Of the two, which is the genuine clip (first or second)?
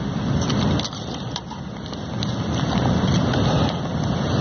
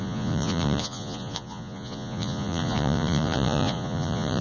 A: first